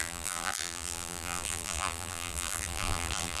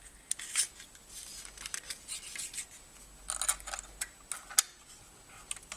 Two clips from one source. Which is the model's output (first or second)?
first